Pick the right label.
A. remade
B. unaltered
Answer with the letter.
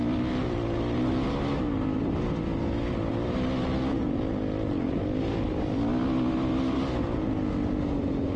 B